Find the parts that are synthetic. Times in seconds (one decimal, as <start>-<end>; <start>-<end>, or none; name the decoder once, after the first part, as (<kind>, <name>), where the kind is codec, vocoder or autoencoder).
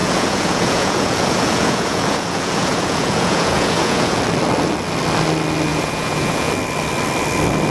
0.0-4.2 (vocoder, Vocos); 5.7-6.5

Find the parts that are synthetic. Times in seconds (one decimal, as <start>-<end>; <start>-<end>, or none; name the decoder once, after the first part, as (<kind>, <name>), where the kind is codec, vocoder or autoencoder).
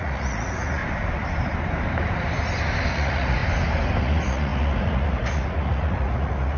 0.0-0.8 (vocoder, Vocos); 2.9-3.4; 4.0-6.6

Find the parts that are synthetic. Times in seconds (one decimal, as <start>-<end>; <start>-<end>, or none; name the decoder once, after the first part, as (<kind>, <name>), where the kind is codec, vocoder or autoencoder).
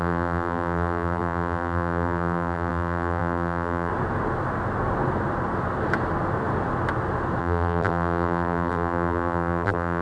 0.0-3.9 (vocoder, BigVGAN v2); 7.4-10.0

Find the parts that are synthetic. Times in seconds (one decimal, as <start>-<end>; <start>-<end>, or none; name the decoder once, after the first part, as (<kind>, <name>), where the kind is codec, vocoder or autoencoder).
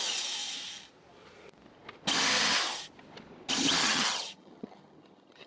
3.8-5.5 (vocoder, HiFi-GAN)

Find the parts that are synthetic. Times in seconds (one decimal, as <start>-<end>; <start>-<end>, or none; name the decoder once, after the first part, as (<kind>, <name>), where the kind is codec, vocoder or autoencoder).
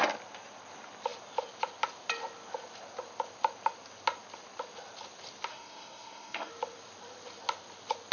5.5-6.5 (codec, SNAC)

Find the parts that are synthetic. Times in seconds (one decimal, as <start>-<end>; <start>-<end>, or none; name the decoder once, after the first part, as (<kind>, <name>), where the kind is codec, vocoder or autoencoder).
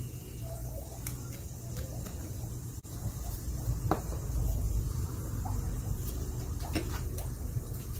0.0-8.0 (vocoder, BigVGAN v2)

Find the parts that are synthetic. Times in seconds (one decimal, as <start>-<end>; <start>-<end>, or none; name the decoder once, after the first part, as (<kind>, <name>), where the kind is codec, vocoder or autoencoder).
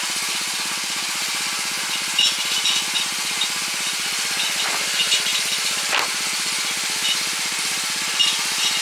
none